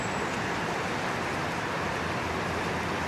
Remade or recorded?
recorded